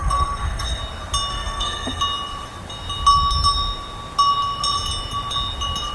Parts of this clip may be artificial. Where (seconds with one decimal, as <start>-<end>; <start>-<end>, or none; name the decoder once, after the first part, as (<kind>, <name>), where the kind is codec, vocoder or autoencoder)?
0.0-0.8 (codec, SNAC); 1.3-2.0

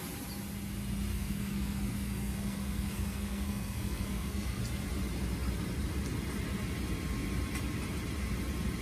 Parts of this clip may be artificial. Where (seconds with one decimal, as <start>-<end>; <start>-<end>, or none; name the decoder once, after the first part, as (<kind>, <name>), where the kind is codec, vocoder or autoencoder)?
1.1-4.6 (codec, SNAC)